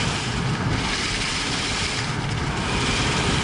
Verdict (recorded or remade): recorded